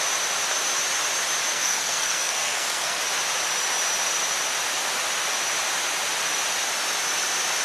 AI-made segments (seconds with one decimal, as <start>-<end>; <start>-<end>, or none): 1.5-3.0